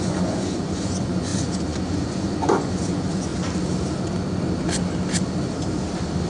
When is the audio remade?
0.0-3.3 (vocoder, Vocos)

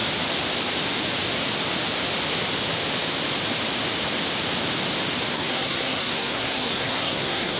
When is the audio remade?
5.3-7.6 (codec, SNAC)

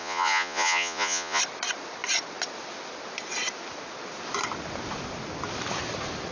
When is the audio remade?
0.0-1.4 (vocoder, Vocos)

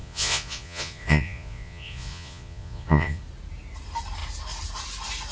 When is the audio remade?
0.0-3.2 (vocoder, Vocos)

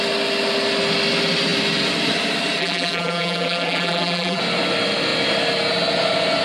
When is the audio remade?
2.6-4.4 (vocoder, BigVGAN v2)

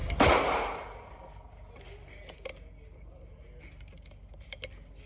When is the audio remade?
none

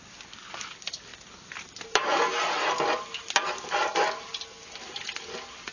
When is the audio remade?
none

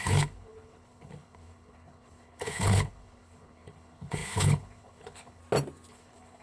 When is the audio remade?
0.0-5.4 (codec, HILCodec); 5.9-6.4